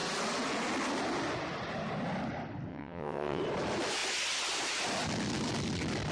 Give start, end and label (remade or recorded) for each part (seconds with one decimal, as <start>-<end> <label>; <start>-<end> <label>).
0.0-2.7 recorded; 2.7-3.4 remade; 3.4-6.1 recorded